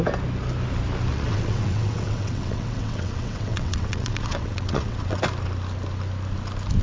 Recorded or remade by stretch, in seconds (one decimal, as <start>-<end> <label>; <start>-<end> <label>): 0.0-1.1 recorded; 1.1-5.2 remade; 5.2-6.8 recorded